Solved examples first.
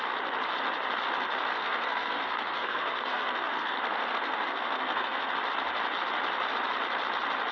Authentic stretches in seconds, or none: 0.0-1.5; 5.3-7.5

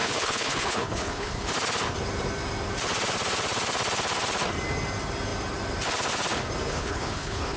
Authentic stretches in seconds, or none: 1.5-6.7

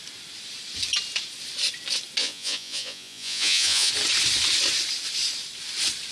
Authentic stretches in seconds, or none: 0.0-2.2; 3.9-6.1

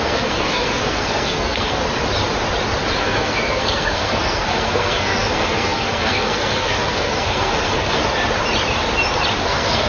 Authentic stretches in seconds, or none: 1.8-3.0; 8.0-9.4